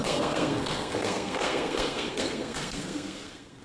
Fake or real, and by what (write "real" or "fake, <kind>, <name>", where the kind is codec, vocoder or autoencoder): fake, codec, SNAC